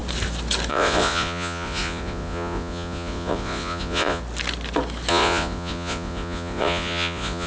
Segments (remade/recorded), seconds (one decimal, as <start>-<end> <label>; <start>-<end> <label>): 0.0-0.7 recorded; 0.7-4.2 remade; 4.2-5.1 recorded; 5.1-7.5 remade